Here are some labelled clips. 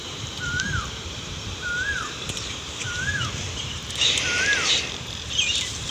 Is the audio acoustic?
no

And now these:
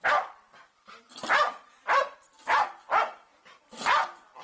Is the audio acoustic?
no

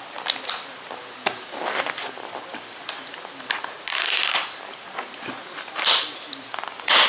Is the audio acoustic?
no